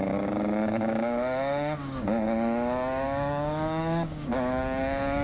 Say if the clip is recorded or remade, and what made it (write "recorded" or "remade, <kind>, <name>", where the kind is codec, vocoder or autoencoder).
remade, codec, DAC